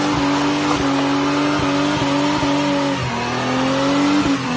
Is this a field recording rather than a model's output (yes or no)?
yes